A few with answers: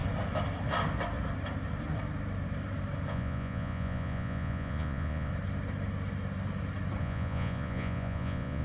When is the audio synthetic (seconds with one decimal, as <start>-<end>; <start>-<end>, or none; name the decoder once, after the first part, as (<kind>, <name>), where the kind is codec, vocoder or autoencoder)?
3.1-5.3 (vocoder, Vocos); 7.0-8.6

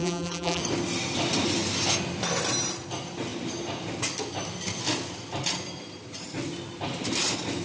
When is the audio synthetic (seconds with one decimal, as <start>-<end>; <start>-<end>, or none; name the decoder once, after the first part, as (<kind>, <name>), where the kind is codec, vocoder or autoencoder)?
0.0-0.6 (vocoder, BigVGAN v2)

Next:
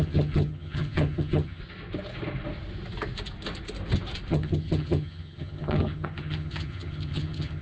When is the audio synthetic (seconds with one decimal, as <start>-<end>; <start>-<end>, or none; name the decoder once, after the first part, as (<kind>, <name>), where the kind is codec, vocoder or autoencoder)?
0.0-1.6 (vocoder, HiFi-GAN); 4.3-7.6

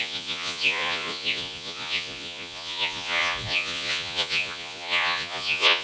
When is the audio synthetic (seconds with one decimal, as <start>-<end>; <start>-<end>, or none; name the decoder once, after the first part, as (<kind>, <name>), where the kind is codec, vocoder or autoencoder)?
0.0-5.8 (vocoder, Vocos)

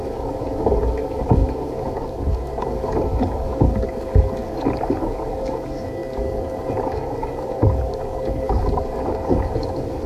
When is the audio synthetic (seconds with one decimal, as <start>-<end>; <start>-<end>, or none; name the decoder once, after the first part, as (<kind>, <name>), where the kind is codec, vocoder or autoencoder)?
0.0-10.1 (codec, DAC)

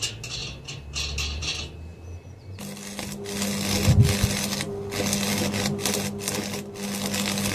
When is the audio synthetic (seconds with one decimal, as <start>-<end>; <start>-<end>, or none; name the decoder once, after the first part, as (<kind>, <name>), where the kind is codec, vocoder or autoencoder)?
0.4-1.4 (vocoder, BigVGAN v2)